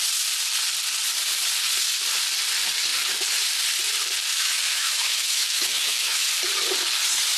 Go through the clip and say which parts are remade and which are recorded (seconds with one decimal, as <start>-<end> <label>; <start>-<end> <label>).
0.0-4.3 recorded; 4.3-6.3 remade; 6.3-7.4 recorded